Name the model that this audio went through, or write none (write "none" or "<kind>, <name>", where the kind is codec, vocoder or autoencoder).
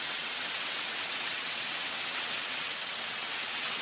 vocoder, WaveNeXt